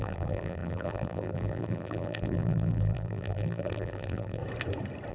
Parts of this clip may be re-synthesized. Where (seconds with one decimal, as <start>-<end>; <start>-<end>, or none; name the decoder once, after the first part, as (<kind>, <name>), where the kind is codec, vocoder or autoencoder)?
0.0-4.4 (vocoder, BigVGAN v2)